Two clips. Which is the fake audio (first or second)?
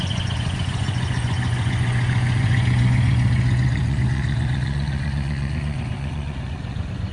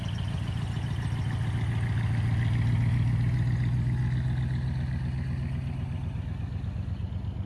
first